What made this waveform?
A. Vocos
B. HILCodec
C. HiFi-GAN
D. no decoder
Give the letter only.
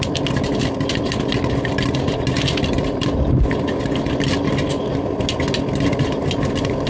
D